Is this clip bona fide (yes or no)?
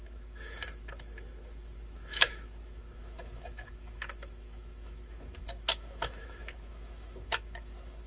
no